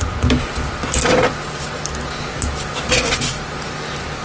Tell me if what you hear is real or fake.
real